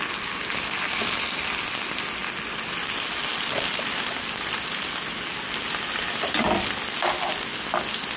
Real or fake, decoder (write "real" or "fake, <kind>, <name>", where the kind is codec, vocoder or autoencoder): real